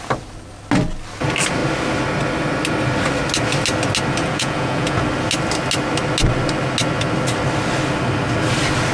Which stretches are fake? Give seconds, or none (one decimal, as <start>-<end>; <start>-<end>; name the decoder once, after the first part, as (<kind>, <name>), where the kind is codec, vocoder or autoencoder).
4.2-5.0 (vocoder, Vocos)